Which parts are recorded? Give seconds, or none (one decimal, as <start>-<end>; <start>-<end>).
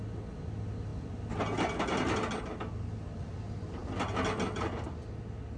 0.0-5.6